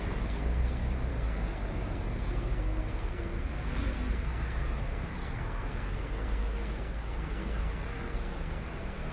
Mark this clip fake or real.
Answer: fake